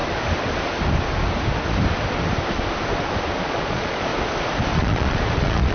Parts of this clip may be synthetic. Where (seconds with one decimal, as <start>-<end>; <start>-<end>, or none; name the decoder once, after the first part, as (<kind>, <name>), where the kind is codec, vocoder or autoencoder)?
3.4-4.1 (vocoder, Vocos); 4.7-5.7